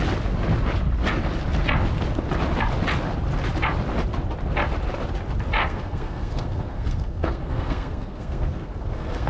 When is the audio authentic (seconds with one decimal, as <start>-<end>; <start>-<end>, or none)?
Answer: 0.0-5.6